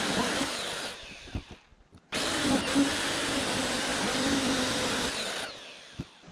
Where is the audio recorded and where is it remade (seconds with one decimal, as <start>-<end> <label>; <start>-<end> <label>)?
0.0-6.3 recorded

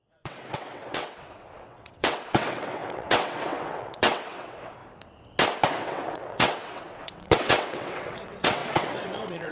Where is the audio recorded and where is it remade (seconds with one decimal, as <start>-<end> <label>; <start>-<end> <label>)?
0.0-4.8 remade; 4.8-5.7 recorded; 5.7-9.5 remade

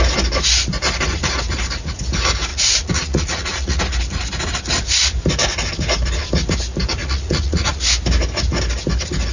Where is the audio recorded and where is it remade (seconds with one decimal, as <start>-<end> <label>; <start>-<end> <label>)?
0.0-2.5 recorded; 2.5-3.8 remade; 3.8-7.0 recorded; 7.0-7.8 remade; 7.8-9.3 recorded

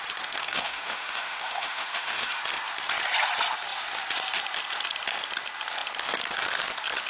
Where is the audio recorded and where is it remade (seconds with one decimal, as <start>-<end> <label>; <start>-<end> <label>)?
0.0-0.4 recorded; 0.4-2.4 remade; 2.4-7.1 recorded

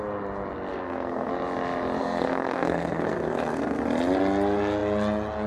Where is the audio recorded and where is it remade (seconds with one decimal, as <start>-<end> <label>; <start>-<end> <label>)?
0.0-0.7 recorded; 0.7-1.3 remade; 1.3-2.0 recorded; 2.0-3.8 remade; 3.8-5.5 recorded